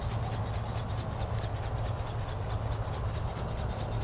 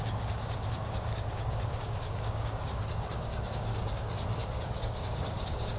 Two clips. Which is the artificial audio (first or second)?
second